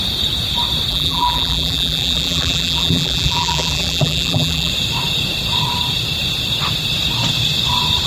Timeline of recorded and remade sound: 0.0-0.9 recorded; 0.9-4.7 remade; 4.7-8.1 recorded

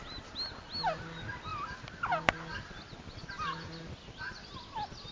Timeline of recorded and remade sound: 0.0-5.1 recorded

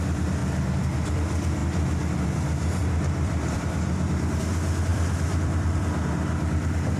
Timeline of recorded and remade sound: 0.0-2.8 recorded; 2.8-4.4 remade; 4.4-4.9 recorded; 4.9-5.8 remade; 5.8-7.0 recorded